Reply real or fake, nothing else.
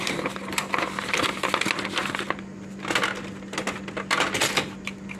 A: real